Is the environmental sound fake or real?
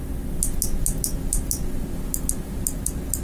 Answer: real